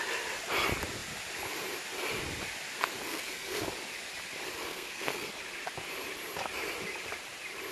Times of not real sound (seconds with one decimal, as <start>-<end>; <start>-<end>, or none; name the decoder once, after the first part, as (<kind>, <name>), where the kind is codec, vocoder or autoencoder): 3.1-3.6 (codec, SNAC); 4.7-5.3